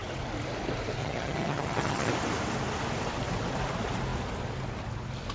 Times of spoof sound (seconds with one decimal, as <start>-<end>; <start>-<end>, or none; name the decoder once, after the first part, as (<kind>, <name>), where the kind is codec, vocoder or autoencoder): 1.0-2.1 (vocoder, HiFi-GAN)